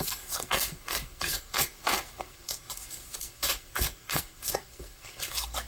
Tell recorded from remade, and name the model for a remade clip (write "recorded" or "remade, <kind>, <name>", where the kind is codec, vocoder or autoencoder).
remade, codec, SNAC